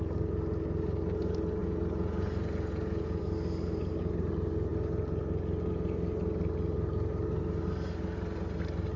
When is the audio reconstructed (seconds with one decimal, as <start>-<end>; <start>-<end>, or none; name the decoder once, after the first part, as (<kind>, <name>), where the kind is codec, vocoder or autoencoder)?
1.6-3.2 (vocoder, Vocos)